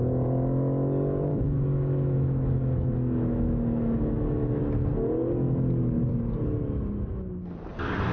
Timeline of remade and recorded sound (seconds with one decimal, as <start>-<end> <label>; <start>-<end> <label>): 0.0-1.3 recorded; 1.3-4.6 remade; 4.6-8.1 recorded